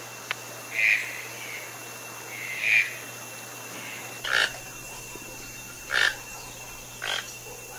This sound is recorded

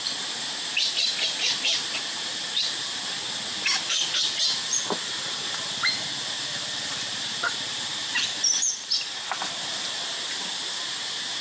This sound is remade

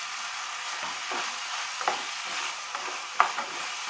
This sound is recorded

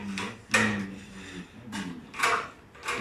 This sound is recorded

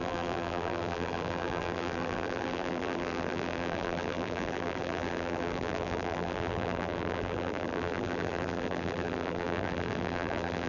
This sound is remade